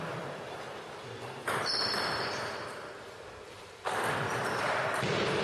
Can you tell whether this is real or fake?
fake